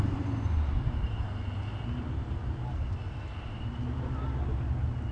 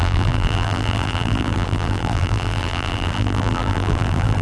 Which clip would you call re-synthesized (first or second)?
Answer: second